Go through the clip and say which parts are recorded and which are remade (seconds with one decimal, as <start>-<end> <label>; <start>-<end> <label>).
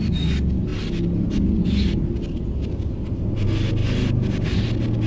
0.0-5.1 recorded